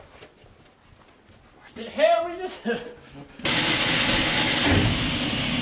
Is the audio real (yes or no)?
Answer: yes